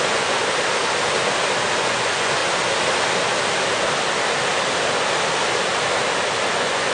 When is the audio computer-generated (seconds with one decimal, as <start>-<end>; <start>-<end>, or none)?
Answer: 0.0-0.4; 1.8-2.4; 6.5-6.9